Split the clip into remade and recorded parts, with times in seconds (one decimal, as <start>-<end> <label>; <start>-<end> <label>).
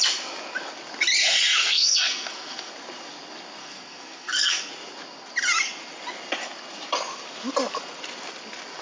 0.0-1.6 recorded; 1.6-2.7 remade; 2.7-3.6 recorded; 3.6-4.7 remade; 4.7-8.8 recorded